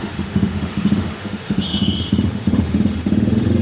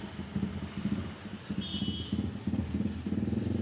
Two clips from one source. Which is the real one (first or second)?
second